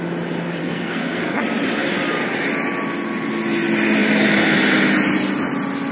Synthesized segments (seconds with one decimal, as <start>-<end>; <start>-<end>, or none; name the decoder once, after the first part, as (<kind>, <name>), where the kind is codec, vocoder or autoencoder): 0.6-1.4 (codec, SNAC)